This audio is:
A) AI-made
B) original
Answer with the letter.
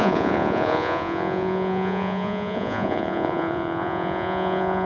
A